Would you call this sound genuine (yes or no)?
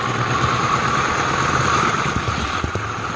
yes